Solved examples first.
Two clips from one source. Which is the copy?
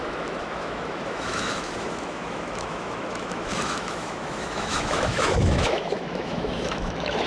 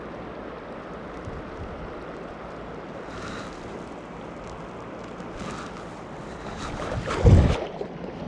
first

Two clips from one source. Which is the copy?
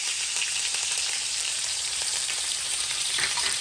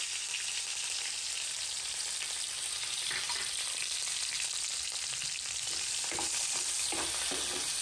first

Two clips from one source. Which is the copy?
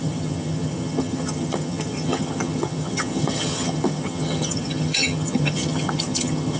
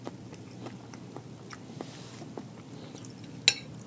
first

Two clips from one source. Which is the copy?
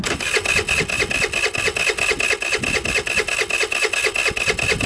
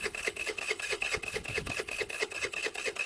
second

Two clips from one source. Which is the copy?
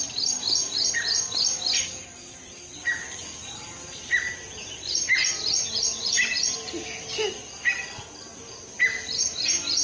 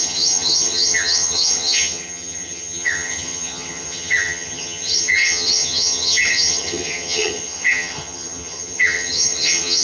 second